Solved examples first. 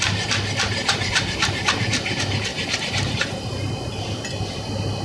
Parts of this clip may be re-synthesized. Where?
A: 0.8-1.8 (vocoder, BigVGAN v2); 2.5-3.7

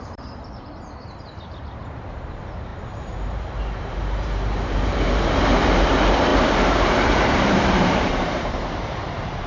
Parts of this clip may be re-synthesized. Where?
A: 0.0-9.5 (vocoder, BigVGAN v2)

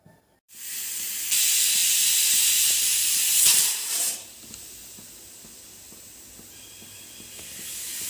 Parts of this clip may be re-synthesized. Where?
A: 3.5-4.0 (vocoder, BigVGAN v2)

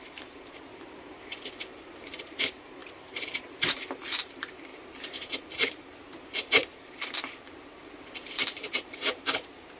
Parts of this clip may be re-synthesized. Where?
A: 0.0-0.7 (vocoder, BigVGAN v2); 1.5-9.8

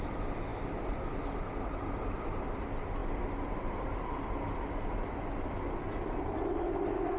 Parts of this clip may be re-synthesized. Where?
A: none

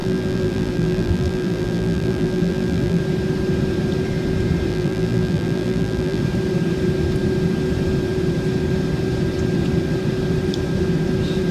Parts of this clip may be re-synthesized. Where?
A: 0.0-3.0 (vocoder, BigVGAN v2); 4.7-6.2

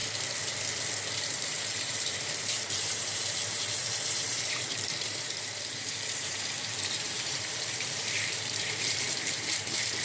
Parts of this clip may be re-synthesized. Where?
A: 1.1-10.0 (vocoder, BigVGAN v2)

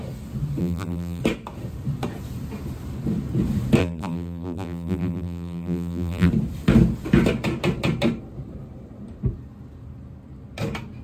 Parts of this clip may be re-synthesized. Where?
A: 0.6-1.2 (vocoder, BigVGAN v2); 3.8-6.3